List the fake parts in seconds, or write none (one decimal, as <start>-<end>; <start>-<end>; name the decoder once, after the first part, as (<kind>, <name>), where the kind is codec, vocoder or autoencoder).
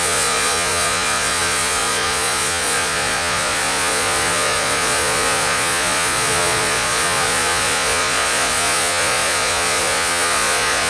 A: 0.0-10.9 (vocoder, Vocos)